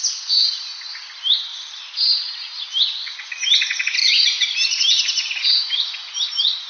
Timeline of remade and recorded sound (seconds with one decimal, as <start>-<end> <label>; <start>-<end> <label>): 0.0-1.5 recorded; 1.5-5.5 remade; 5.5-6.7 recorded